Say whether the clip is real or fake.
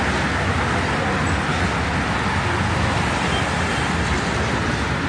real